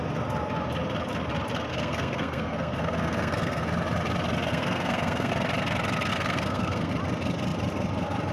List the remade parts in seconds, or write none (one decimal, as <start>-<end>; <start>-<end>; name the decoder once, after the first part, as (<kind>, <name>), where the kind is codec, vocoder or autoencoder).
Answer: 1.7-3.6 (codec, SNAC); 4.5-5.3; 6.1-6.9